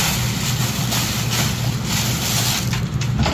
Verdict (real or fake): real